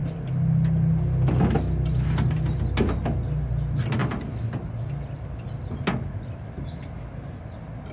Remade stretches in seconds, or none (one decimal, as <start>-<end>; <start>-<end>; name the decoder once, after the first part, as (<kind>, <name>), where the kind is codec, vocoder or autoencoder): none